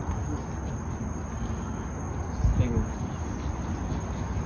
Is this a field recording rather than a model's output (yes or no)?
yes